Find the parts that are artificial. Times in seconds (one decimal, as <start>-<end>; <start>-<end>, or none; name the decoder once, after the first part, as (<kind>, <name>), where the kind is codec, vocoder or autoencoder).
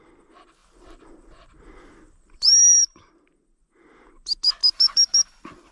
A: 0.6-3.1 (vocoder, BigVGAN v2); 4.6-5.7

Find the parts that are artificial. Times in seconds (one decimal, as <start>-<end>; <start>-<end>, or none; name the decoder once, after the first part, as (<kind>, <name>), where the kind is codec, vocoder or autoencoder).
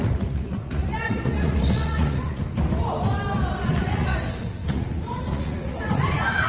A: 0.0-2.4 (vocoder, Vocos); 3.8-6.5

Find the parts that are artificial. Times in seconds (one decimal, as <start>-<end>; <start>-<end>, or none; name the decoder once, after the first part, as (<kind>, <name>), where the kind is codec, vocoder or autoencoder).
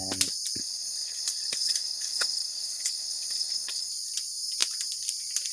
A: 0.6-3.9 (codec, HILCodec)